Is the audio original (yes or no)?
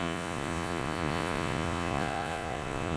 no